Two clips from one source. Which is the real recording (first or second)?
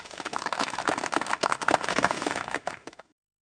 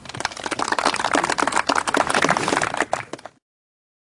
second